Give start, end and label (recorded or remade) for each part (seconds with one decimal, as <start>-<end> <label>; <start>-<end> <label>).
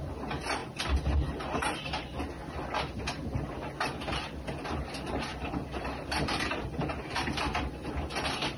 0.0-8.6 recorded